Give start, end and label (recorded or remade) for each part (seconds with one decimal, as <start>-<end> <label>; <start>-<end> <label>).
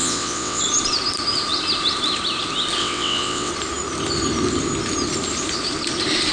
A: 0.0-0.6 remade; 0.6-2.8 recorded; 2.8-3.5 remade; 3.5-6.3 recorded